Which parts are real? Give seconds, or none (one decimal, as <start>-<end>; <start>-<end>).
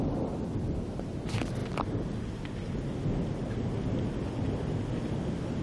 0.0-5.6